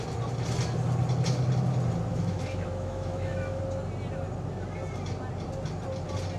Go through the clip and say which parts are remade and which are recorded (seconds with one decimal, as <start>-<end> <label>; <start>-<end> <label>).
0.0-2.1 recorded; 2.1-3.6 remade; 3.6-6.4 recorded